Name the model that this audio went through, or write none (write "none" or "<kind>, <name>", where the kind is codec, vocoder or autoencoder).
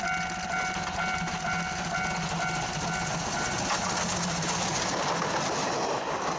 none